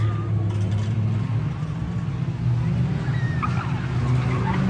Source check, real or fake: real